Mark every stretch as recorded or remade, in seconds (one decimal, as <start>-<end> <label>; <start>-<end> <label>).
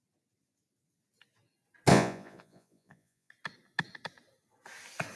0.0-1.9 recorded; 1.9-3.3 remade; 3.3-5.2 recorded